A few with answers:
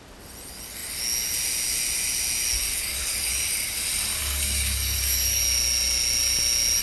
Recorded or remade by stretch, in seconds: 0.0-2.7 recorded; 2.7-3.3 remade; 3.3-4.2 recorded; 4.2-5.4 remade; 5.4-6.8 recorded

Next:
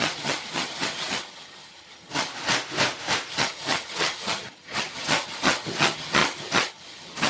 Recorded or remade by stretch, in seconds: 0.0-2.3 remade; 2.3-3.3 recorded; 3.3-7.3 remade

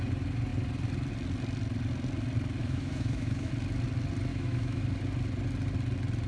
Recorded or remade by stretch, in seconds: 0.0-2.6 recorded; 2.6-3.5 remade; 3.5-4.3 recorded; 4.3-4.8 remade; 4.8-6.3 recorded

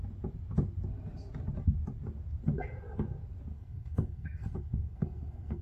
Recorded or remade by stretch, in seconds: 0.0-3.5 recorded; 3.5-5.6 remade

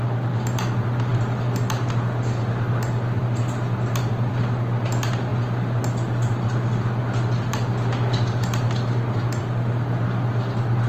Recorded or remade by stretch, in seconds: 0.0-10.9 recorded

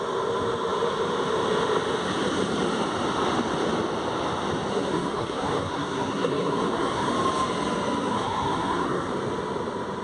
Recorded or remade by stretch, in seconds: 0.0-4.7 recorded; 4.7-7.1 remade; 7.1-8.1 recorded; 8.1-9.1 remade; 9.1-10.0 recorded

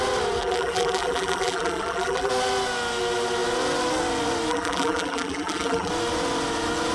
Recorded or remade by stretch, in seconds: 0.0-0.4 recorded; 0.4-2.3 remade; 2.3-4.5 recorded; 4.5-5.9 remade; 5.9-6.9 recorded

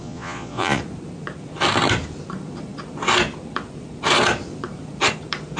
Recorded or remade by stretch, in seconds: 0.0-0.8 remade; 0.8-5.6 recorded